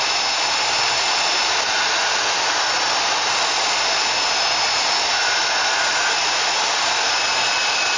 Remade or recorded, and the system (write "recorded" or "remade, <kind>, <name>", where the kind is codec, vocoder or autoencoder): recorded